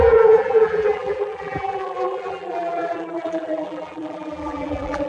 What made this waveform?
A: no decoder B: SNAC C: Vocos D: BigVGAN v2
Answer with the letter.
D